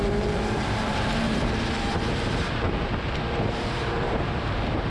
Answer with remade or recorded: remade